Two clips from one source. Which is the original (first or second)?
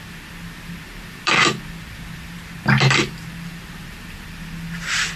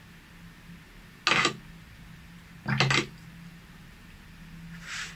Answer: second